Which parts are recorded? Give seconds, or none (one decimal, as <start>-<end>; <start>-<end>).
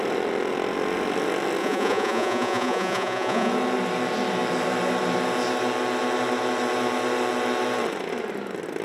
0.0-1.6; 3.5-8.8